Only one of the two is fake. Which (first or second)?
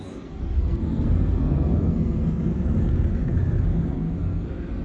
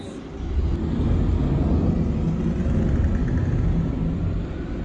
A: first